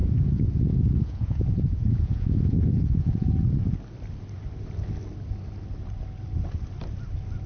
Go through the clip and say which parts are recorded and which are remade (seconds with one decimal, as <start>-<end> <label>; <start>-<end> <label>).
0.0-3.3 remade; 3.3-7.5 recorded